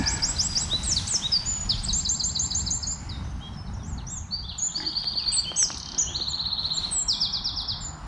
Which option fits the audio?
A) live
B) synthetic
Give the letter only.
A